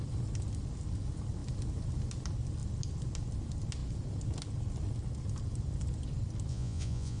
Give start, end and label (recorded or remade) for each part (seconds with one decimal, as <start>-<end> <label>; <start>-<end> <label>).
0.0-6.5 recorded; 6.5-7.2 remade